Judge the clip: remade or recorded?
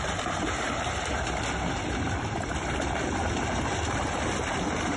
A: recorded